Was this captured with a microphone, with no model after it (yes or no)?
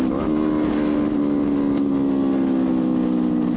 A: yes